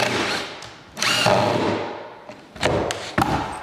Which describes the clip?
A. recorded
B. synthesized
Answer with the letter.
A